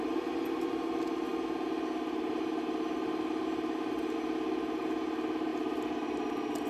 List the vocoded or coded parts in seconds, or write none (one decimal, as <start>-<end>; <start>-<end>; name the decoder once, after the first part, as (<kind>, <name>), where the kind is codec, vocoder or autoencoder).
none